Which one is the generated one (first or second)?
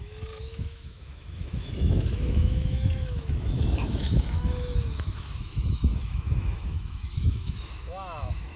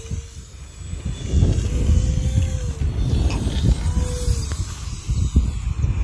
first